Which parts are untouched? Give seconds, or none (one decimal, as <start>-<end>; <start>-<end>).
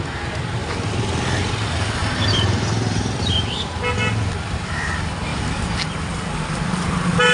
0.0-2.0; 3.6-5.3; 5.8-7.3